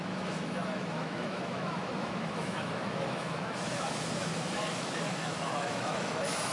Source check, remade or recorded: remade